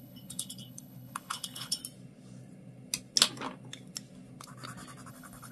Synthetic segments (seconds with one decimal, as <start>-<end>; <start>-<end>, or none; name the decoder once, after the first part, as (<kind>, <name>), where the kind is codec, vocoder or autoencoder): 0.0-1.8 (codec, HILCodec); 5.1-5.5